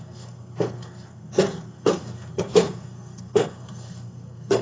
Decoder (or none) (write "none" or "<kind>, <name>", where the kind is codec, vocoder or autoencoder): codec, SNAC